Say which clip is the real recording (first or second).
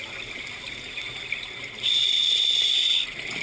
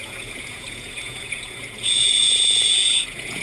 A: first